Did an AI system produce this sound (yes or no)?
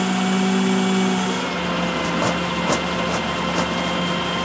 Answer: no